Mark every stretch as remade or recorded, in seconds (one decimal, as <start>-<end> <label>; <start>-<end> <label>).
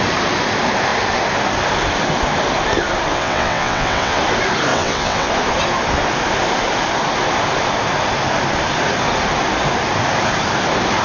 0.0-3.1 recorded; 3.1-4.2 remade; 4.2-4.7 recorded; 4.7-5.3 remade; 5.3-11.0 recorded